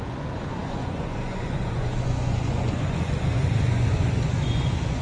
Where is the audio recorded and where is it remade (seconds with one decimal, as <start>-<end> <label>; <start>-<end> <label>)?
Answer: 0.0-5.0 remade